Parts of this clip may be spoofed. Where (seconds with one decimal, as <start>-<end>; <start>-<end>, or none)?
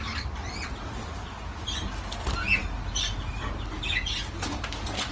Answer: none